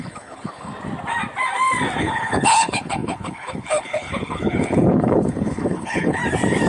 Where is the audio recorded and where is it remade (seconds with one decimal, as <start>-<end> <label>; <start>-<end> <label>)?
0.0-0.7 remade; 0.7-2.0 recorded; 2.0-6.2 remade; 6.2-6.7 recorded